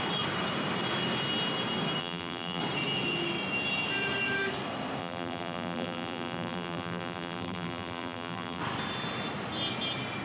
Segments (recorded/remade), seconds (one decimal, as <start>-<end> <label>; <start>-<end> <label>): 0.0-2.0 recorded; 2.0-2.6 remade; 2.6-5.0 recorded; 5.0-8.6 remade; 8.6-10.2 recorded